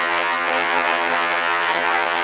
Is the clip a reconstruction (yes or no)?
yes